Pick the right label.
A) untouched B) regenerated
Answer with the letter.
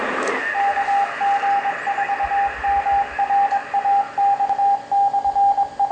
A